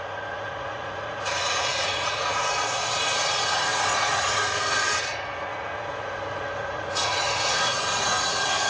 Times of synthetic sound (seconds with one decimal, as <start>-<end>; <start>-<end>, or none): 0.0-8.7